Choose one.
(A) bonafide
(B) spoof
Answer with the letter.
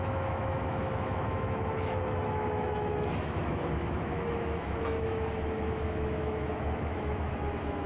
B